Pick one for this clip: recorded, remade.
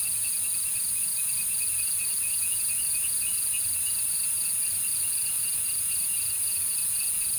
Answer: remade